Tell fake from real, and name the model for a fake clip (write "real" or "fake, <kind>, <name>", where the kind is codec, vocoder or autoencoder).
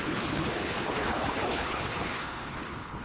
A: fake, codec, HILCodec